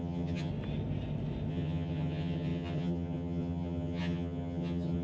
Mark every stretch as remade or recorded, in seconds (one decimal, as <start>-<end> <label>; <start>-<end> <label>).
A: 0.0-0.5 remade; 0.5-1.5 recorded; 1.5-5.0 remade